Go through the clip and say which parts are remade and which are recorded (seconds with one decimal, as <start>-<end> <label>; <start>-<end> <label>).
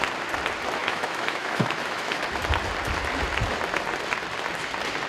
0.0-0.8 recorded; 0.8-2.2 remade; 2.2-5.1 recorded